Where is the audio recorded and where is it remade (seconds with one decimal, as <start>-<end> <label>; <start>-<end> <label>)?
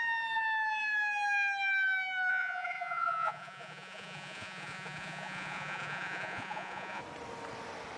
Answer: 0.0-2.3 recorded; 2.3-7.0 remade; 7.0-8.0 recorded